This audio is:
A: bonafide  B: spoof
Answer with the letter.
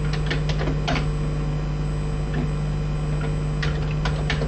A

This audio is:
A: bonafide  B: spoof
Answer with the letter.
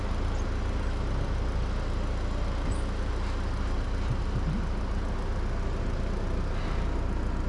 A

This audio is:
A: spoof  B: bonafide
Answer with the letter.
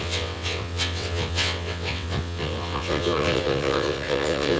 A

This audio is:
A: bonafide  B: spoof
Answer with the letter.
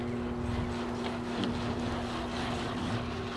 A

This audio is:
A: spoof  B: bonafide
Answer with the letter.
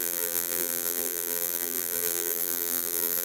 A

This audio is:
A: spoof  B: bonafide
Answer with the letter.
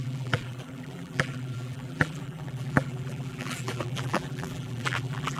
A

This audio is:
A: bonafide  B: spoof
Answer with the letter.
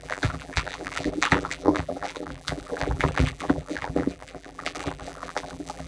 B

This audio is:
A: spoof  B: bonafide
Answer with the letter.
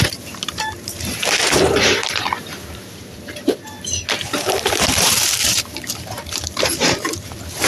A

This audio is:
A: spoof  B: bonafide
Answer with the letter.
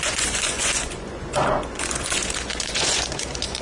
A